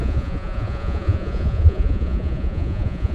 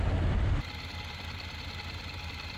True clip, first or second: second